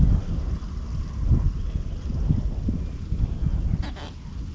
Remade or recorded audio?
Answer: recorded